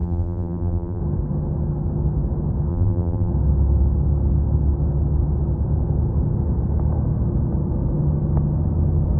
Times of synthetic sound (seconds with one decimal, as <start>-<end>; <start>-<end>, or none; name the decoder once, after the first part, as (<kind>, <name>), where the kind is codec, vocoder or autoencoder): 0.0-1.0 (vocoder, BigVGAN v2); 2.7-3.3